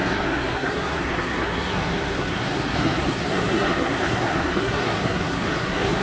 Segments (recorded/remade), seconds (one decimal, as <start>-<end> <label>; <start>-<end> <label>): 0.0-6.0 remade